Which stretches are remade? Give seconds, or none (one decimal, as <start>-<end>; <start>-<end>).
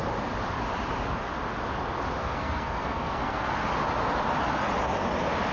2.2-3.5